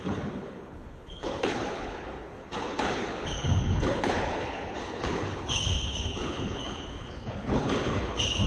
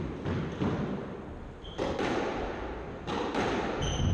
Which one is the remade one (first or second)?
first